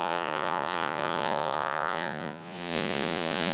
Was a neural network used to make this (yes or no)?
yes